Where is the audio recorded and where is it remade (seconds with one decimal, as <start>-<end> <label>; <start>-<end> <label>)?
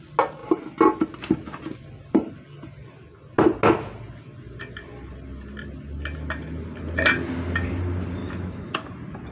0.0-8.2 recorded; 8.2-8.9 remade; 8.9-9.3 recorded